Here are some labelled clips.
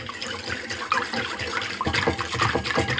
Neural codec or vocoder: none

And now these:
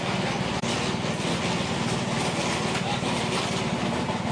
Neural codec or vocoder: none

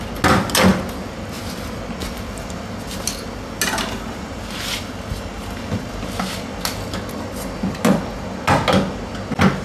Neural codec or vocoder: none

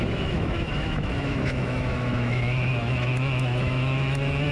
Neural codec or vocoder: autoencoder, DAC-VAE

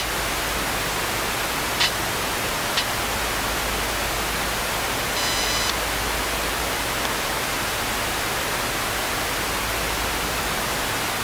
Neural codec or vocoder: none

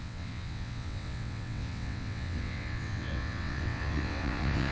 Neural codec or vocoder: vocoder, WaveNeXt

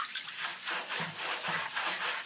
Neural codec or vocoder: none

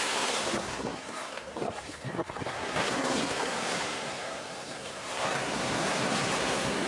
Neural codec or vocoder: codec, SNAC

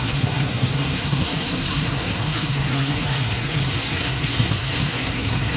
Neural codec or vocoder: codec, SNAC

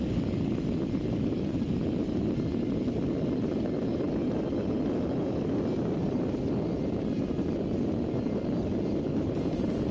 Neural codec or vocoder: none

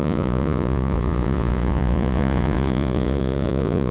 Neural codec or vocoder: vocoder, Vocos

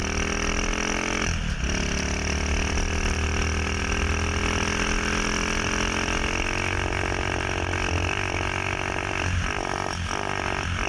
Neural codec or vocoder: none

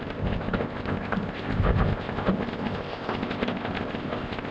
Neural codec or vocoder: codec, ZipCodec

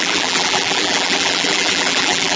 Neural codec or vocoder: vocoder, BigVGAN v2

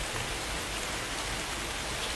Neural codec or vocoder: none